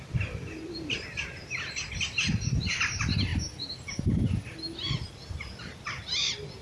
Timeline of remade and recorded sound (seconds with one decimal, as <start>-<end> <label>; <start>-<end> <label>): 0.0-6.6 recorded